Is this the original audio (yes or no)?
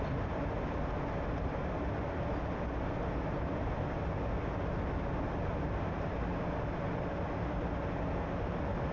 yes